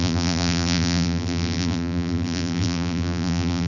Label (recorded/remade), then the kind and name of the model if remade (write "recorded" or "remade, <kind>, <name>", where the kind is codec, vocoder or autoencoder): remade, vocoder, BigVGAN v2